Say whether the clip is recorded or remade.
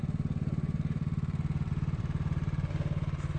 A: remade